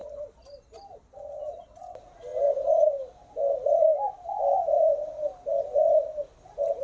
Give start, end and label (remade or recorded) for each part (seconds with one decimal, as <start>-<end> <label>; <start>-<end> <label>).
0.0-6.8 recorded